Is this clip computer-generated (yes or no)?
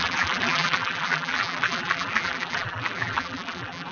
yes